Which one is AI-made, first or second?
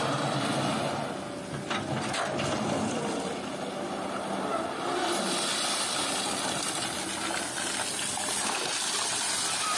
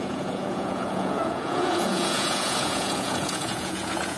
second